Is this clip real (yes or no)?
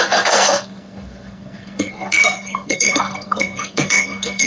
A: no